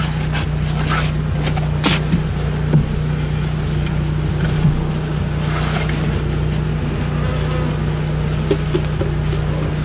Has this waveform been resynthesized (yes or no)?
no